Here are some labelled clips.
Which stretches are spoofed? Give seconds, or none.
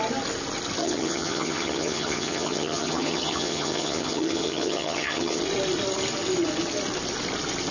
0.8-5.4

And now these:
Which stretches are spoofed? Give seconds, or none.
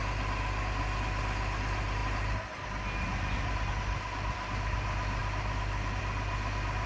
none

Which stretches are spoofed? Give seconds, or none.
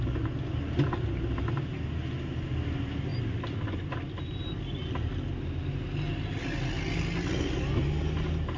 none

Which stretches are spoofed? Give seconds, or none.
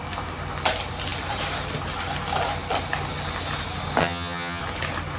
4.0-4.6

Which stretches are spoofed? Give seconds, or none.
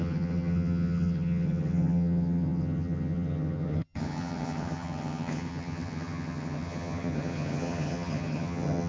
0.0-8.9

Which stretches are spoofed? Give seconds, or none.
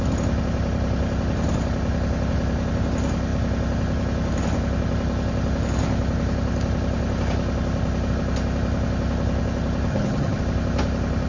9.9-10.4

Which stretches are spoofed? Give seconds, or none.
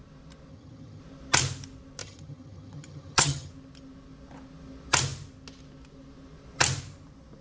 0.5-1.0; 2.0-3.5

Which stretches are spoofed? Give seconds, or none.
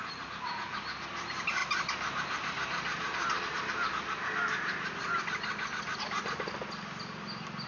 none